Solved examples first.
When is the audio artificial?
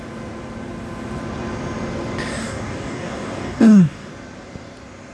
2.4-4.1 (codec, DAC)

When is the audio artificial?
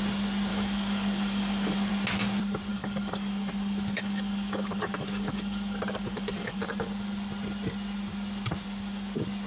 0.5-1.9 (codec, DAC); 2.7-6.6